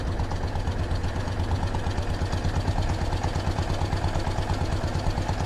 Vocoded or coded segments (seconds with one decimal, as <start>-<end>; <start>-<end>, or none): none